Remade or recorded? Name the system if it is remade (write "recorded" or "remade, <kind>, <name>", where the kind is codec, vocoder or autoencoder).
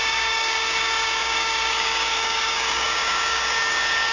remade, codec, DAC